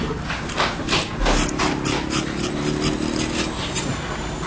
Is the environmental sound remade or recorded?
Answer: recorded